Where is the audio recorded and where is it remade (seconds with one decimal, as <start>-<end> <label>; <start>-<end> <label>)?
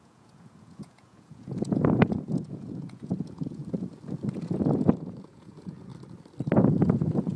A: 0.0-3.6 remade; 3.6-4.3 recorded; 4.3-5.9 remade; 5.9-6.8 recorded; 6.8-7.4 remade